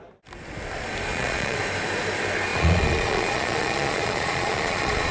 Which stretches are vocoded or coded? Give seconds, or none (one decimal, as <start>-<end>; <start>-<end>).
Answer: 1.1-1.6; 2.5-5.1